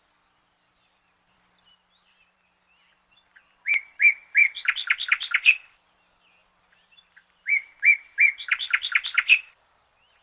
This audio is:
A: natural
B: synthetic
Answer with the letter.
B